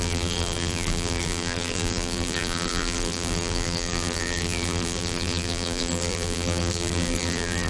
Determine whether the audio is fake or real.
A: fake